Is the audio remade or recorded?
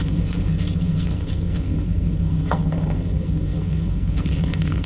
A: remade